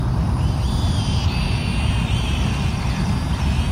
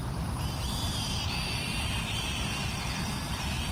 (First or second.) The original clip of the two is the first